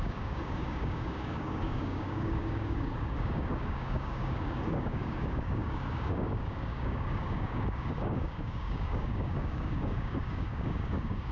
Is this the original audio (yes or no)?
no